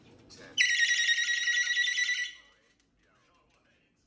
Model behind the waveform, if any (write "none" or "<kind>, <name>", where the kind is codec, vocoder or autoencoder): none